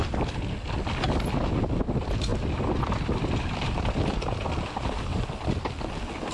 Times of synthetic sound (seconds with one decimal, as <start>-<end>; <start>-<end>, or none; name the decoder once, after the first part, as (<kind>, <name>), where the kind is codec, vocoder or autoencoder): 2.3-4.5 (vocoder, BigVGAN v2); 5.1-5.6